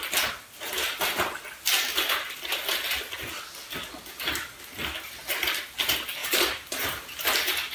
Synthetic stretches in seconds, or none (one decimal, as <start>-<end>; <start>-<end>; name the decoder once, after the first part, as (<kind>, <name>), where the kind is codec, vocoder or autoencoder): 6.2-7.2 (vocoder, BigVGAN v2)